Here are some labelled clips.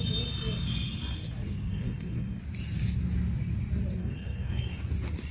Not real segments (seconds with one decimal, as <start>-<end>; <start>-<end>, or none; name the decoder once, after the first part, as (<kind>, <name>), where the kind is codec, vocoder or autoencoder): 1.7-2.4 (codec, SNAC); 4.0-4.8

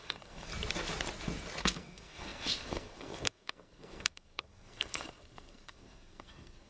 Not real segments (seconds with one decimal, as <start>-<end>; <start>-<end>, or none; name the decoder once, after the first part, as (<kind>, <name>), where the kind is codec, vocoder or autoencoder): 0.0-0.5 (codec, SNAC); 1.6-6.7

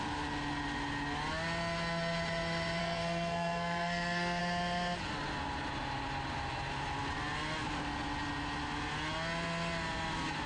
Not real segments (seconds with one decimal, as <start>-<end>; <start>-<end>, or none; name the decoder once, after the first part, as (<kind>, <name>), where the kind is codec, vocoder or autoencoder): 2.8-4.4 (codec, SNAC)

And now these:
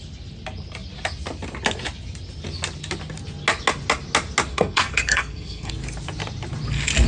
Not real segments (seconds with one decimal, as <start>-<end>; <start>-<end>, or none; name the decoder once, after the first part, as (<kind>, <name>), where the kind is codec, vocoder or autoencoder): 4.5-5.7 (codec, SNAC)

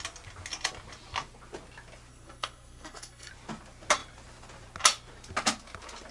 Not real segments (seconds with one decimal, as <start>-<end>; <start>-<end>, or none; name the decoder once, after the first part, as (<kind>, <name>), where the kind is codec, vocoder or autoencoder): 2.1-3.3 (codec, SNAC)

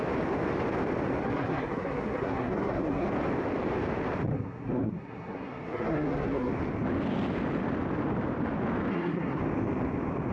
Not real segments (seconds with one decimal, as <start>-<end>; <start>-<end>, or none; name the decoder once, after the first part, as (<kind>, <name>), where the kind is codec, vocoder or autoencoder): 1.2-3.1 (codec, SNAC); 4.3-6.5; 8.9-9.4

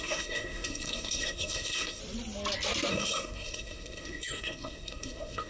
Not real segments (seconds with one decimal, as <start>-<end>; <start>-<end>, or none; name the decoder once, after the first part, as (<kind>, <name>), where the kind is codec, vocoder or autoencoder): 0.0-2.0 (codec, SNAC); 2.9-5.5